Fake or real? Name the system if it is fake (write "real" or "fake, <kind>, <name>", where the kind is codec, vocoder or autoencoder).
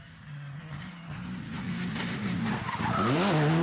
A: real